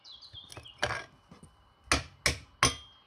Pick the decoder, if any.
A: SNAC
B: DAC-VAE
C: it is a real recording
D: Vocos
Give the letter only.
C